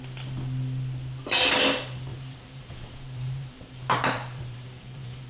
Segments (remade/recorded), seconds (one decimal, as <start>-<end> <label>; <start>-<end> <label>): 0.0-2.1 recorded; 2.1-5.3 remade